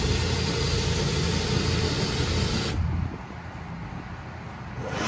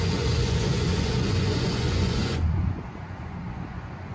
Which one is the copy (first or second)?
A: second